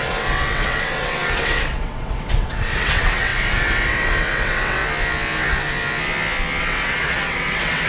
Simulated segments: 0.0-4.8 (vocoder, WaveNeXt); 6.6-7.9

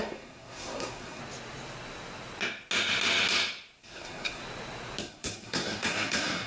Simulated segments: 0.0-1.2 (codec, SNAC); 3.8-4.4; 5.0-6.5

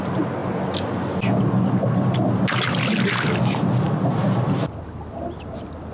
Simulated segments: 4.1-4.7 (vocoder, BigVGAN v2)

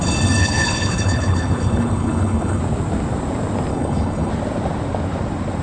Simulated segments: 0.4-2.6 (codec, HILCodec); 3.7-4.3

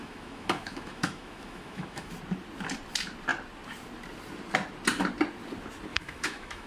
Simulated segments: 0.0-2.1 (autoencoder, DAC-VAE); 5.9-6.7

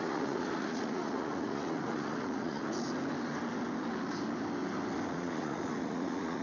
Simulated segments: 0.0-2.7 (vocoder, Vocos); 5.1-6.4